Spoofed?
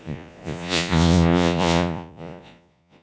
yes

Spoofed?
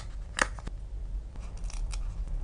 no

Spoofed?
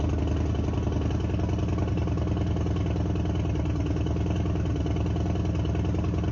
no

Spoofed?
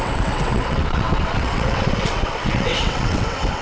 yes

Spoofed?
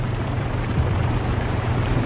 yes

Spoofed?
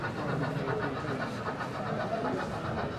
no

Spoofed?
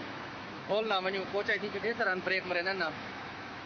yes